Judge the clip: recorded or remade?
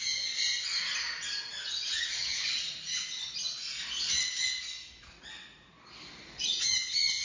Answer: recorded